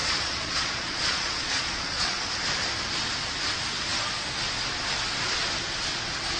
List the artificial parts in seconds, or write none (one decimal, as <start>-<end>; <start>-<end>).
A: 0.0-2.3

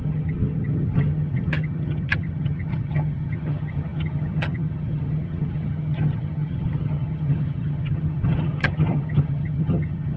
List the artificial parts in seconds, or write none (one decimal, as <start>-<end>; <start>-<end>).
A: 0.0-10.2

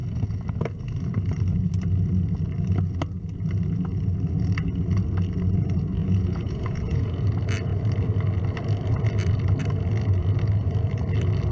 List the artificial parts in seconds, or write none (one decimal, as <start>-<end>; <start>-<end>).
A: 6.0-7.2

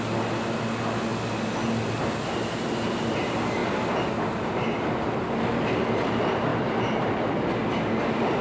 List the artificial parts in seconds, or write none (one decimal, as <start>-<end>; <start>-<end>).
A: 3.6-6.1; 6.5-7.3

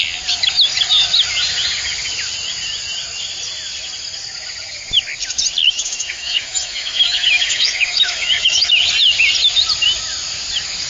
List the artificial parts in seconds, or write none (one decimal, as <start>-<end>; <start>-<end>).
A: 5.6-8.7